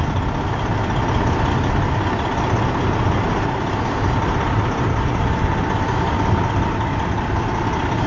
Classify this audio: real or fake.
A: real